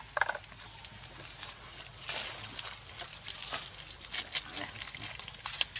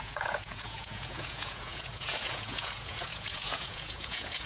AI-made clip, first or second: second